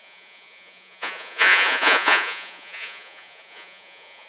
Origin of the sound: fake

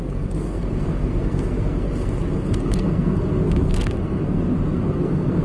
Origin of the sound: fake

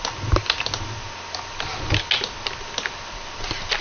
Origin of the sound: real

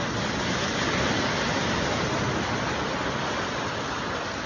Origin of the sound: real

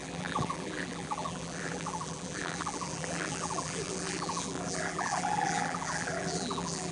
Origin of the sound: fake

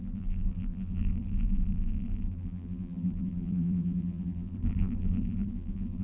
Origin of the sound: fake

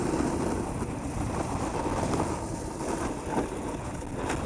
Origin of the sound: real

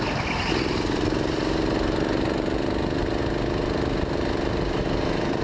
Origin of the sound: real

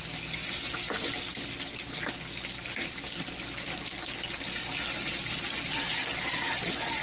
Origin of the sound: real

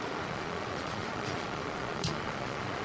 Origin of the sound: fake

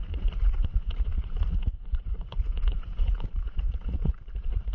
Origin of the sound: fake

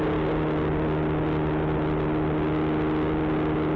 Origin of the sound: real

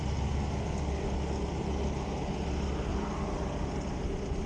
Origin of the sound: real